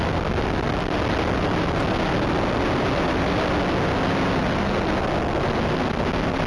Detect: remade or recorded recorded